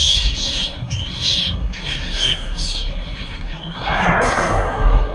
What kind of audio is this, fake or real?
fake